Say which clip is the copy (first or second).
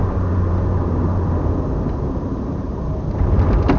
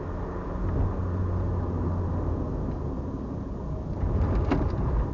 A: first